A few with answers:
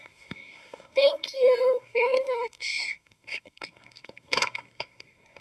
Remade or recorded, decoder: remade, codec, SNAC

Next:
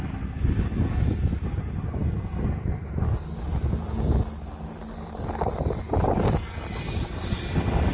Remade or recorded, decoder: recorded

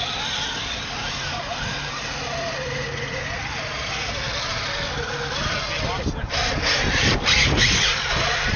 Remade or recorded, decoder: recorded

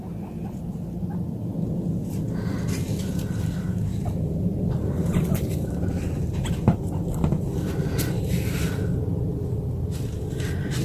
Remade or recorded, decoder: recorded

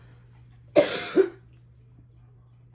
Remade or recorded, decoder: recorded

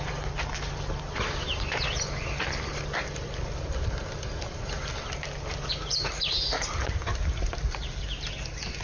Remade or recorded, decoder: recorded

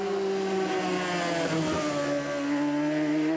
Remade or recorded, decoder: recorded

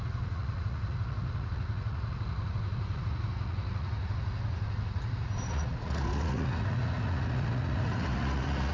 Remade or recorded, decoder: remade, vocoder, Vocos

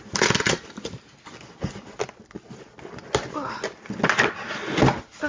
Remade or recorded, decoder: recorded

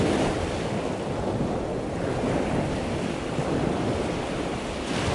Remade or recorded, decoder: recorded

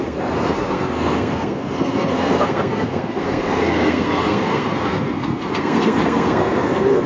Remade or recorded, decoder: remade, codec, SNAC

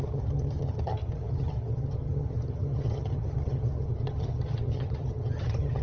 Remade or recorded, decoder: remade, vocoder, HiFi-GAN